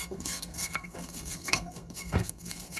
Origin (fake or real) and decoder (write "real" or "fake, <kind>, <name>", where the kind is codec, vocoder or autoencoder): fake, codec, SNAC